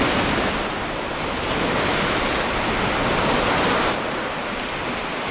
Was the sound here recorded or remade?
recorded